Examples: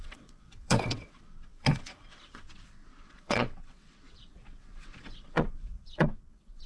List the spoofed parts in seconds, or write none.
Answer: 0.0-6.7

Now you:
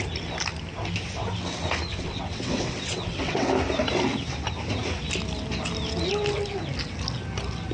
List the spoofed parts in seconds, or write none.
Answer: 1.9-3.5